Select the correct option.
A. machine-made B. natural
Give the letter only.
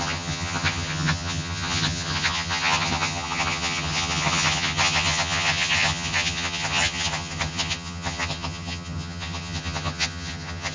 A